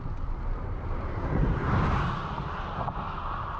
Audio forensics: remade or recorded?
recorded